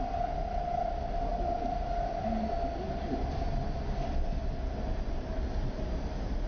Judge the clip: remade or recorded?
recorded